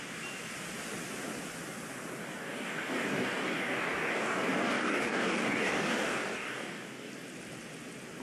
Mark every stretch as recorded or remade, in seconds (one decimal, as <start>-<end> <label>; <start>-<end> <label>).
0.0-2.2 recorded; 2.2-7.1 remade; 7.1-8.2 recorded